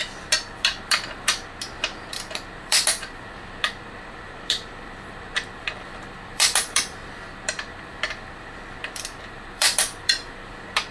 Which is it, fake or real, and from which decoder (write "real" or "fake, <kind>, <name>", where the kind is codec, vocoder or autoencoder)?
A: fake, vocoder, BigVGAN v2